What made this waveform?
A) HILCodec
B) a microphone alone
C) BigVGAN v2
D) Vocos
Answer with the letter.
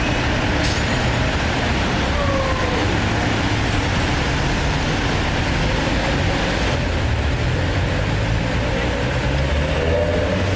B